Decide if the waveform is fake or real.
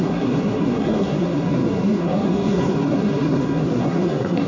fake